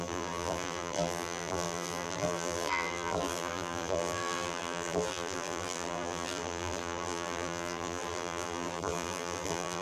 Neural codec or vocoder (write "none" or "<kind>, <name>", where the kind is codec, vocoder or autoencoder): vocoder, BigVGAN v2